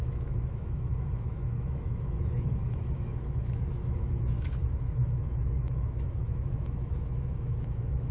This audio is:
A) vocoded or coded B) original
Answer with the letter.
A